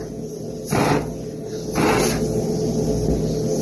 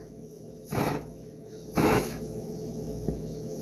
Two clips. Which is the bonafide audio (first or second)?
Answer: first